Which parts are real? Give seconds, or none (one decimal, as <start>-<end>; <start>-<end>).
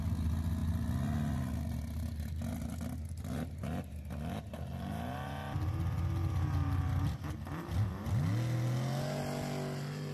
0.0-10.1